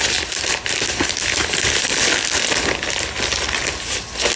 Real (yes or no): yes